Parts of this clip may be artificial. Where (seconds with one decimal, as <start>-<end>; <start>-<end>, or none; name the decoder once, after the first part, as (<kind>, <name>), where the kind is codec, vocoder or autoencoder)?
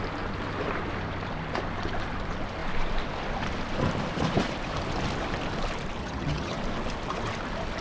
6.0-6.6 (vocoder, HiFi-GAN)